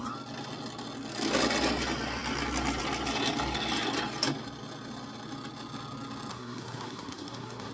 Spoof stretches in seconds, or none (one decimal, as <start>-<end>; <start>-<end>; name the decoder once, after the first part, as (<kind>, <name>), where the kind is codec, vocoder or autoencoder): 6.3-7.7 (codec, SNAC)

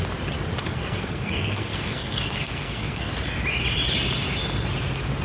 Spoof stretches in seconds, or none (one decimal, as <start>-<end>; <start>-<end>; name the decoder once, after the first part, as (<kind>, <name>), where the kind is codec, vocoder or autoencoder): 0.6-3.1 (codec, SNAC)